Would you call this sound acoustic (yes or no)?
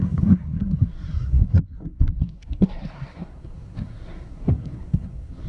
no